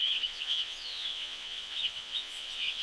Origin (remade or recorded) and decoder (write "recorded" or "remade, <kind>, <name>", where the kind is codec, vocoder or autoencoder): remade, vocoder, Vocos